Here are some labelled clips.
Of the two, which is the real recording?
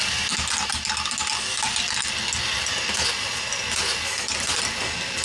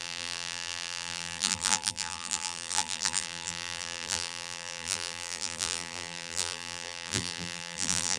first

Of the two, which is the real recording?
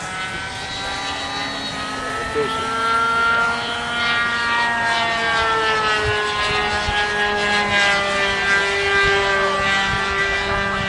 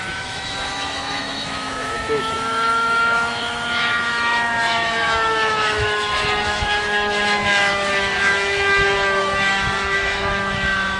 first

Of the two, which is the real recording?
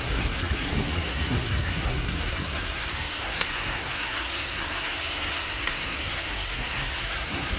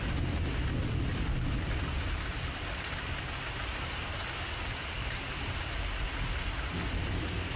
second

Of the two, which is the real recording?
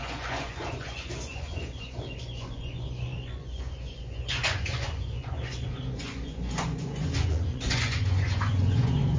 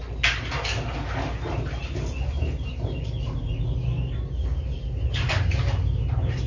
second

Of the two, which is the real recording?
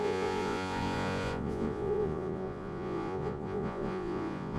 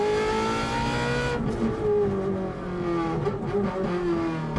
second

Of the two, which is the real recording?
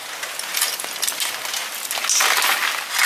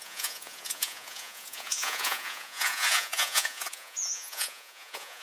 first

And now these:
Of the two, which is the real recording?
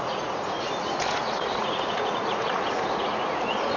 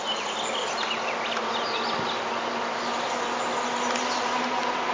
second